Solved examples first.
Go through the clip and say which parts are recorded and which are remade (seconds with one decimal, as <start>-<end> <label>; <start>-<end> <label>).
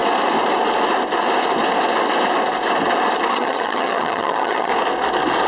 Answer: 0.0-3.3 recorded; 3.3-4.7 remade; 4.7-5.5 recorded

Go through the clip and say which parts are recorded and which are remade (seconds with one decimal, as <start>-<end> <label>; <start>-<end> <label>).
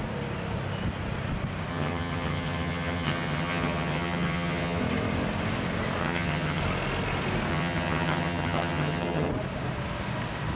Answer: 0.0-1.7 recorded; 1.7-4.8 remade; 4.8-6.0 recorded; 6.0-6.6 remade; 6.6-7.5 recorded; 7.5-9.3 remade; 9.3-10.6 recorded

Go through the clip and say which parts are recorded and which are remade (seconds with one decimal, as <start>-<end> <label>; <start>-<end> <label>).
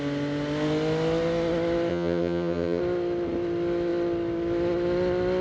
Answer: 0.0-1.9 recorded; 1.9-2.8 remade; 2.8-5.4 recorded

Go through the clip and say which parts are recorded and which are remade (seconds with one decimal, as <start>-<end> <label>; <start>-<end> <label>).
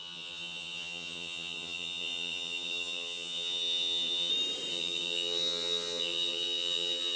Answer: 0.0-4.3 remade; 4.3-4.7 recorded; 4.7-7.2 remade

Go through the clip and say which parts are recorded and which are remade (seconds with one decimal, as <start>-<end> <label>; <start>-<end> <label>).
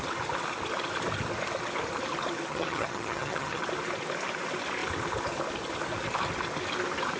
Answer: 0.0-2.5 recorded; 2.5-3.6 remade; 3.6-7.2 recorded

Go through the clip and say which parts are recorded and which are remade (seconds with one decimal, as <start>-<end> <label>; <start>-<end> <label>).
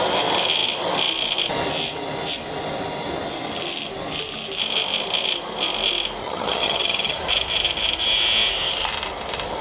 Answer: 0.0-6.2 recorded; 6.2-7.2 remade; 7.2-9.6 recorded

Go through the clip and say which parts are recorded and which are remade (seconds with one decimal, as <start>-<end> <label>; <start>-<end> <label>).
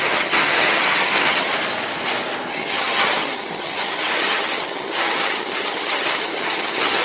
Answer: 0.0-1.5 remade; 1.5-2.5 recorded; 2.5-7.0 remade